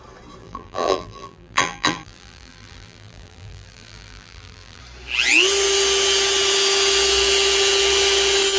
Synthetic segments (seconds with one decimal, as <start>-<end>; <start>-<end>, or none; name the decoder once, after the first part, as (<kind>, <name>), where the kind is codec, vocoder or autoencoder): 0.4-4.8 (vocoder, BigVGAN v2)